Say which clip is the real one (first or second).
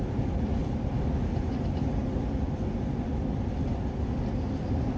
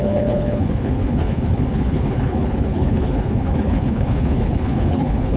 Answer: first